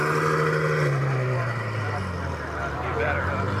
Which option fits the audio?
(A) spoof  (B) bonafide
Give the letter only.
B